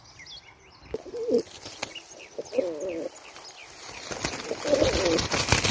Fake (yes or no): no